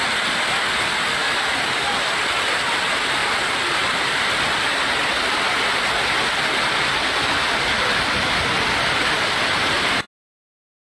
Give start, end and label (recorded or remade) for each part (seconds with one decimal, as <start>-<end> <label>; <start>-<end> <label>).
0.0-10.9 recorded